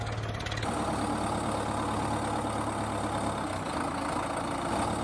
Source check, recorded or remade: recorded